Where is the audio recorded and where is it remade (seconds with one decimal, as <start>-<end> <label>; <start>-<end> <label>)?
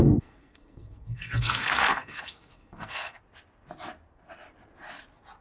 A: 0.0-3.2 remade; 3.2-5.4 recorded